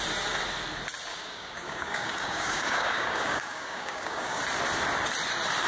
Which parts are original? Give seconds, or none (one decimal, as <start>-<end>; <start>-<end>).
0.0-1.1; 4.4-5.7